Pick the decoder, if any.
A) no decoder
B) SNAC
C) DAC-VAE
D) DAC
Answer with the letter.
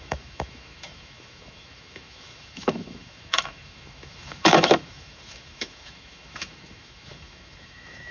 C